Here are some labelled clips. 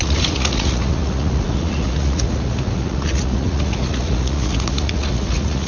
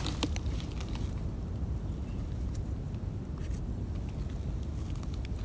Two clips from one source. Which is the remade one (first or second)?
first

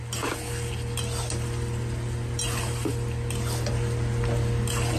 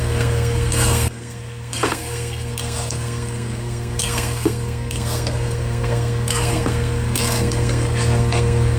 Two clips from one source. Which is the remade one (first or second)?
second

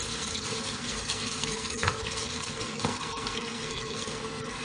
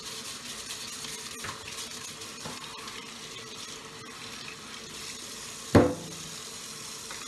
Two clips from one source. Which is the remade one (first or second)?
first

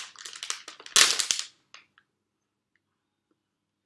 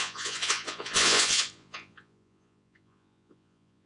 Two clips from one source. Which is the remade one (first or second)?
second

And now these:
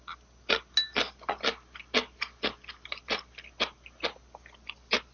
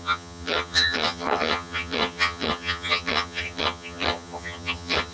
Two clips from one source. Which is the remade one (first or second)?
second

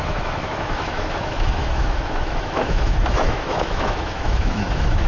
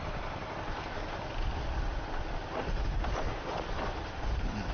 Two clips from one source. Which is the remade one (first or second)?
first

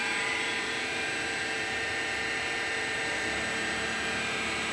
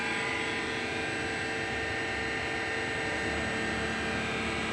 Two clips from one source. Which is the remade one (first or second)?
first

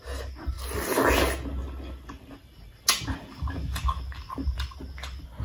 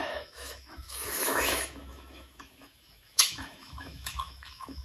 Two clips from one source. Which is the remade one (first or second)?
second